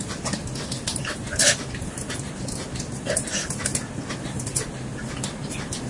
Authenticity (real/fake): real